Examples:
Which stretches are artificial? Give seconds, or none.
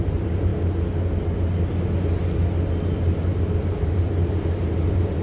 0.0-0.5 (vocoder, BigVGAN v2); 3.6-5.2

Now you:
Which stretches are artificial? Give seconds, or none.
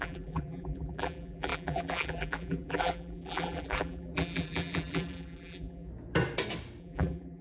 0.0-5.9 (vocoder, BigVGAN v2); 6.8-7.4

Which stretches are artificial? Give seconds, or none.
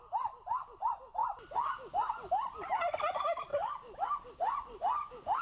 3.5-5.4 (vocoder, BigVGAN v2)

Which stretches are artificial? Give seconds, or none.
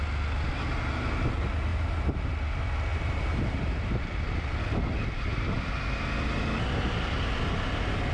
1.7-2.3 (vocoder, BigVGAN v2); 2.9-4.0; 5.3-5.8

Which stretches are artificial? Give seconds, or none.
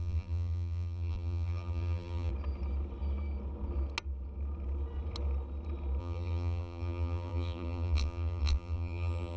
0.0-2.3 (vocoder, BigVGAN v2); 6.0-9.4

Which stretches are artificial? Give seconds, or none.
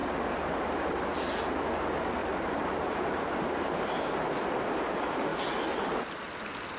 2.2-3.8 (vocoder, BigVGAN v2)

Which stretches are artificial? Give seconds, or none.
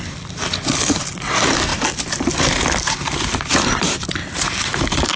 0.0-4.2 (vocoder, BigVGAN v2)